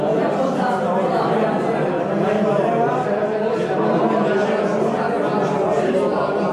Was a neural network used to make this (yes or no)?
no